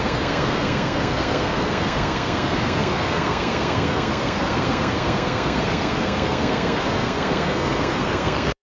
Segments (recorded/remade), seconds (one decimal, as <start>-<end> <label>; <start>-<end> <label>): 0.0-8.6 remade